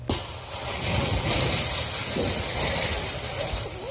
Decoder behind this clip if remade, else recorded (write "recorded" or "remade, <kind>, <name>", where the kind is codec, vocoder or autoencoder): recorded